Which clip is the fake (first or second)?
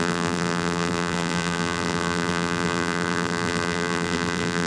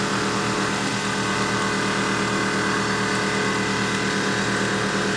first